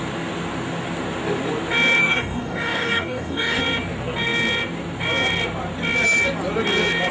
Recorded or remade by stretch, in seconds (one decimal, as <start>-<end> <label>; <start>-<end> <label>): 0.0-2.0 recorded; 2.0-3.6 remade; 3.6-7.1 recorded